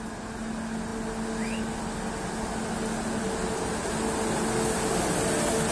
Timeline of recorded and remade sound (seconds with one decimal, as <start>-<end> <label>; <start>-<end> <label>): 0.0-5.7 recorded